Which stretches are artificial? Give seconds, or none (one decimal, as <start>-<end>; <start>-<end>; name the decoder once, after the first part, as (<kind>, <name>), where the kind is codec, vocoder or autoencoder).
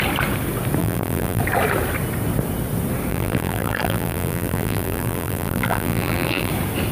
0.8-1.4 (vocoder, BigVGAN v2); 3.1-6.5